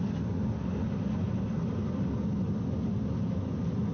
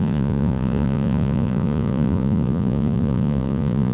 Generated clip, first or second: second